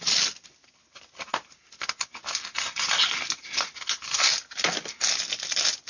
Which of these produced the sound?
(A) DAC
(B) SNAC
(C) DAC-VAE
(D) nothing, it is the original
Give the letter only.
D